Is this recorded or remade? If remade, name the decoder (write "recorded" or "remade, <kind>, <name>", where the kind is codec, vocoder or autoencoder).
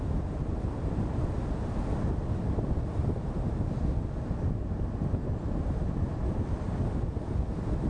recorded